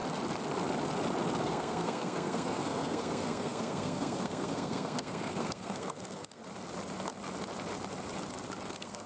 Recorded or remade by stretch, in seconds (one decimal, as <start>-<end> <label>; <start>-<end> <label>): 0.0-1.4 recorded; 1.4-6.4 remade; 6.4-8.7 recorded; 8.7-9.1 remade